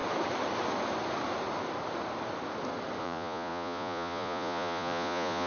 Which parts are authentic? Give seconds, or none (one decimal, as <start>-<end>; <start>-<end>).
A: 0.0-3.0